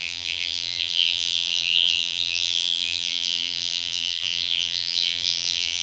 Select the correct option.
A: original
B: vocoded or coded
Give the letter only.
B